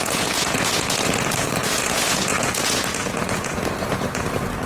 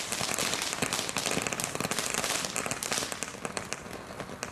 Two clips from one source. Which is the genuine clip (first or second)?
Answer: second